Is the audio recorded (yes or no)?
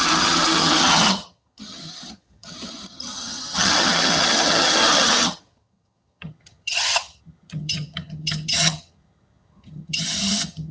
no